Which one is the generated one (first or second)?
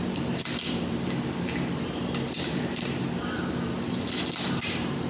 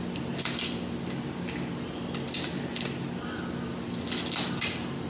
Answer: first